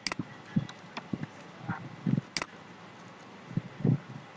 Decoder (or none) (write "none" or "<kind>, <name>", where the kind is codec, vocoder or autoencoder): none